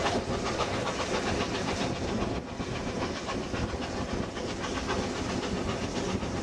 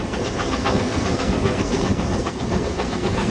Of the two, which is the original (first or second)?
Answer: first